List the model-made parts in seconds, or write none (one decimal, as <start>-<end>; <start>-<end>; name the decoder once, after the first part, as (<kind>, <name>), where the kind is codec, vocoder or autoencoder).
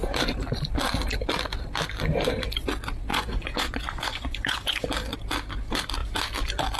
3.1-4.7 (vocoder, Vocos)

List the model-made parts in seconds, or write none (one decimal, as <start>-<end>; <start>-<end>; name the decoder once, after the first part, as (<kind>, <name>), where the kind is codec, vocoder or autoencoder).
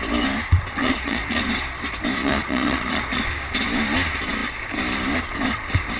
0.8-1.4 (vocoder, Vocos); 2.2-3.2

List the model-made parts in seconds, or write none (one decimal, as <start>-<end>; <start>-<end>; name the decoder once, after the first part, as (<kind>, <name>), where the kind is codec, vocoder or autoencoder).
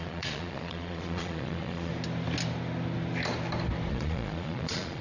0.0-1.9 (vocoder, Vocos); 3.9-5.0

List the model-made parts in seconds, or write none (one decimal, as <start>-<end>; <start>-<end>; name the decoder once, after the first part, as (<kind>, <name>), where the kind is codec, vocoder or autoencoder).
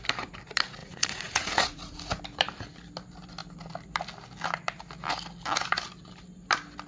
0.8-2.2 (vocoder, Vocos)